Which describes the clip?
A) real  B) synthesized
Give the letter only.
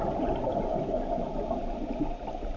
A